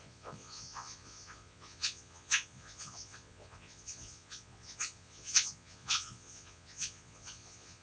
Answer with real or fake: fake